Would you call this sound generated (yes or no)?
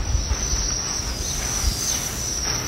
no